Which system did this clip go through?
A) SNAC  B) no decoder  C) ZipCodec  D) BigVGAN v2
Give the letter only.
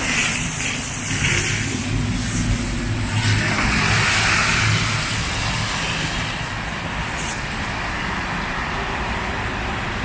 B